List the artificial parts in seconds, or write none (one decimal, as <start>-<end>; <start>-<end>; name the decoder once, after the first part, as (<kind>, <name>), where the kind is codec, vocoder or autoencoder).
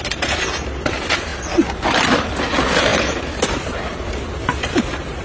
none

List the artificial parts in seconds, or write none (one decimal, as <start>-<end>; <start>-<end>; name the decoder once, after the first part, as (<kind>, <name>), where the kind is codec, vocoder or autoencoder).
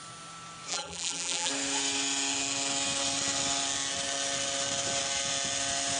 0.7-1.5 (vocoder, BigVGAN v2)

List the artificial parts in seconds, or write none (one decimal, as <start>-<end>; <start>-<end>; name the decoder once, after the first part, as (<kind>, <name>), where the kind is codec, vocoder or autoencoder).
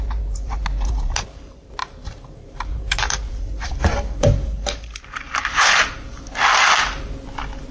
1.8-5.8 (vocoder, BigVGAN v2)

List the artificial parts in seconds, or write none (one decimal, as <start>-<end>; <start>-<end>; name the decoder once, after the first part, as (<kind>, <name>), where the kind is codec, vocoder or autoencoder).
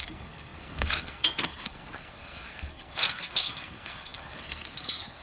0.0-5.2 (codec, SNAC)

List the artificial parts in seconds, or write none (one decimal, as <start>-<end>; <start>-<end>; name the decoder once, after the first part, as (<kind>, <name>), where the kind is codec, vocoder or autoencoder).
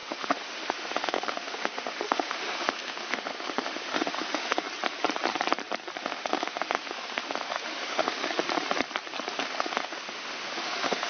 0.0-4.6 (autoencoder, DAC-VAE); 6.0-8.3; 9.3-11.1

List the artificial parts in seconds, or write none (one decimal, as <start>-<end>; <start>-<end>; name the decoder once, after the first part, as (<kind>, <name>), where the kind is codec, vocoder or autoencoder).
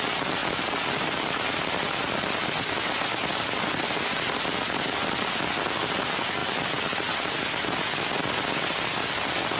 6.4-7.3 (vocoder, BigVGAN v2)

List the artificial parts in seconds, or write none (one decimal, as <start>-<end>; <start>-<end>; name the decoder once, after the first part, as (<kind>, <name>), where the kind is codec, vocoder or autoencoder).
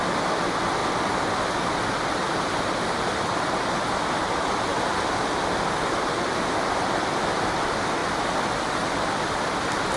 0.8-3.8 (vocoder, BigVGAN v2); 8.0-8.6